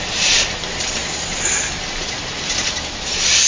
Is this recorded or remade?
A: recorded